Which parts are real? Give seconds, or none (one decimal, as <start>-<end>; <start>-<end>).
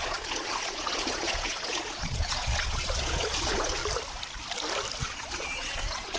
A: 3.8-5.0